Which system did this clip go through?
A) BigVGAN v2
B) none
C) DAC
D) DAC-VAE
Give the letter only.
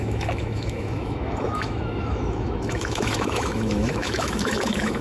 D